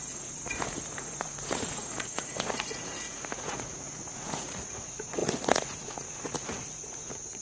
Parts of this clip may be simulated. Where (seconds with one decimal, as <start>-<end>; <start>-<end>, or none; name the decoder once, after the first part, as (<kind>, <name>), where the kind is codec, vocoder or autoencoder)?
0.0-7.4 (vocoder, Vocos)

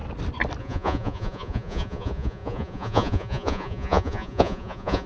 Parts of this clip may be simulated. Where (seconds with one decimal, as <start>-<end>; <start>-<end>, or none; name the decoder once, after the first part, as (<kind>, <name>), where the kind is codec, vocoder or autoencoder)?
0.6-5.1 (vocoder, Vocos)

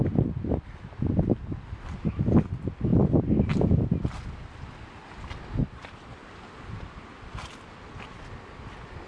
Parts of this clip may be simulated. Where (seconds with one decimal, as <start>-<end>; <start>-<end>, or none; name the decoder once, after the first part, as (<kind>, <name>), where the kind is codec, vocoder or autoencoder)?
none